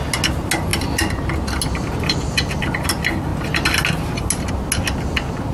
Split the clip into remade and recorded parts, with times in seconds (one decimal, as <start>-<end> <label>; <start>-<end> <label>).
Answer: 0.0-5.5 recorded